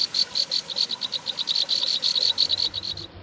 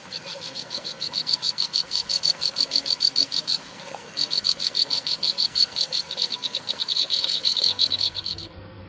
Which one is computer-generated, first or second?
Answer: second